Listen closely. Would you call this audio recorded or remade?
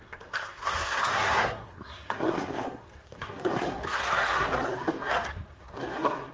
remade